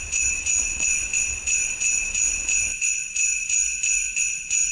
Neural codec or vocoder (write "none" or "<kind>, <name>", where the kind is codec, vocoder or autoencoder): vocoder, Vocos